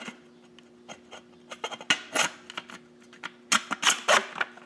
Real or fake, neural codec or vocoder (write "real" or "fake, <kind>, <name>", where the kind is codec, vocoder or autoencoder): real